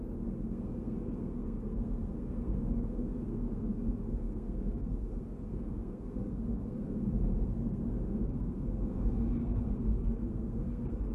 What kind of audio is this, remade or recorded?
remade